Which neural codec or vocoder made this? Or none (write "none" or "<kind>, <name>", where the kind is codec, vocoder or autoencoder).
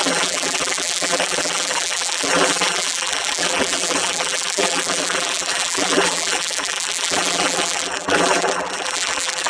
vocoder, BigVGAN v2